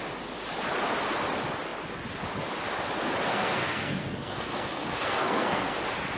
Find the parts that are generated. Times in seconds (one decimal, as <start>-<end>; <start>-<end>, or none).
3.3-5.8